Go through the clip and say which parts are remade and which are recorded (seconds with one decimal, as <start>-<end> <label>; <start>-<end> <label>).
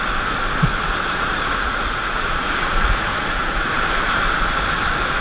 0.0-0.7 recorded; 0.7-3.8 remade; 3.8-5.2 recorded